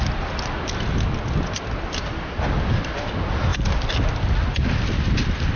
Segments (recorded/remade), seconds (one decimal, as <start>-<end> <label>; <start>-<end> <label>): 0.0-5.6 recorded